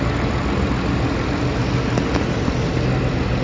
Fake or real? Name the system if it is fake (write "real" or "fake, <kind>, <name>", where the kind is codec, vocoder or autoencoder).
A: real